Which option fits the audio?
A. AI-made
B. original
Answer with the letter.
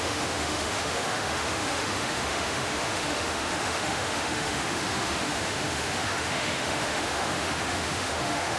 A